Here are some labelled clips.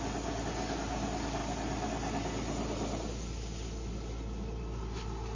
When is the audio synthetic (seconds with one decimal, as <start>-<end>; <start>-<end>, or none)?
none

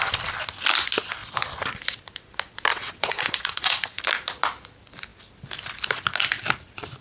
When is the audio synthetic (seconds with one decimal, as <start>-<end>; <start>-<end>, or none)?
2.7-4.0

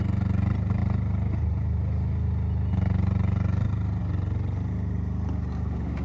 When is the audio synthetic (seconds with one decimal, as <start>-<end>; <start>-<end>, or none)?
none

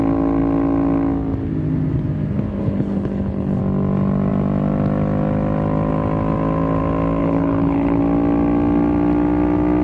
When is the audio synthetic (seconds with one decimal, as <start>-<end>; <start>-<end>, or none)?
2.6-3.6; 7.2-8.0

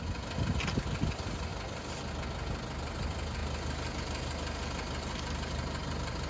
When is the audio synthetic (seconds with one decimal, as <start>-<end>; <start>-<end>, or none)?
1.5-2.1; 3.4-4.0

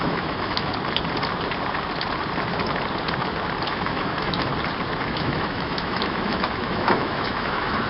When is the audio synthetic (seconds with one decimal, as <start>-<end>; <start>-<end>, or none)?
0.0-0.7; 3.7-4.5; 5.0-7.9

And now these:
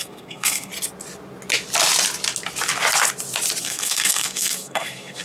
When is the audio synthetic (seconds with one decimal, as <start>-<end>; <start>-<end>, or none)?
0.0-0.7; 3.6-5.2